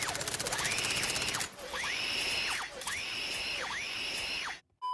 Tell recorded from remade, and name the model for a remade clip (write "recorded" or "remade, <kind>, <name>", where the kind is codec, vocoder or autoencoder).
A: recorded